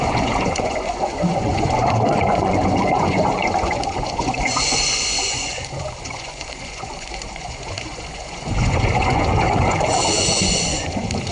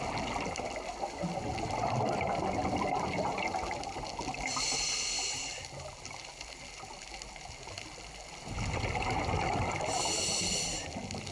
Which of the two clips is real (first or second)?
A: second